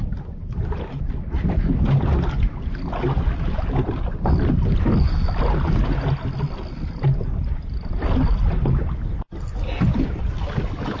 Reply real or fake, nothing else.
real